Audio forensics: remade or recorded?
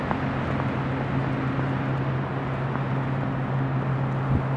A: recorded